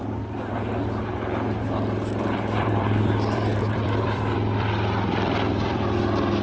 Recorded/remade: remade